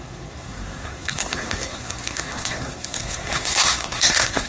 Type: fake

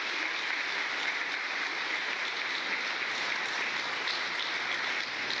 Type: real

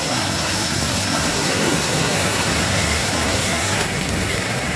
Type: fake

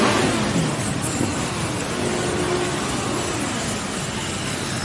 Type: real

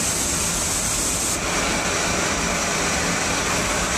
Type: real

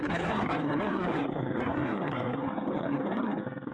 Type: fake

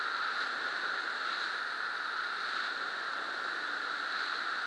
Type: real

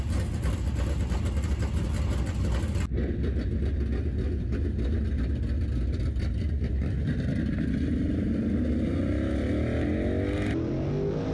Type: real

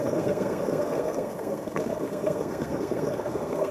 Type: fake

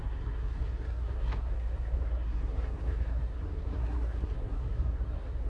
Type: fake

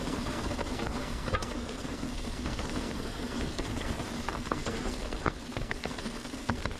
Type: fake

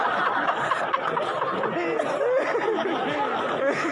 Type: real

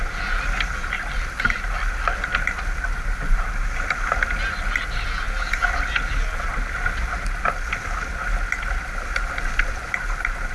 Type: real